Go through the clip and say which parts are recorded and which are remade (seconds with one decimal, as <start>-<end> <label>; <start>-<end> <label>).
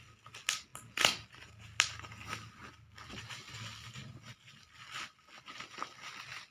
0.0-0.7 recorded; 0.7-1.5 remade; 1.5-6.5 recorded